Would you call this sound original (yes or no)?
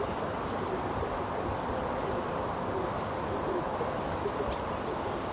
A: yes